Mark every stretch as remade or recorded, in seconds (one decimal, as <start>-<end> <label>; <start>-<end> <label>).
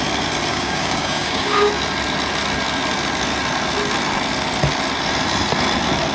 0.0-0.5 recorded; 0.5-1.7 remade; 1.7-6.1 recorded